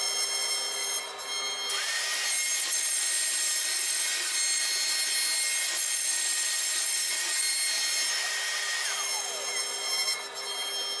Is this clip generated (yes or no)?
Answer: no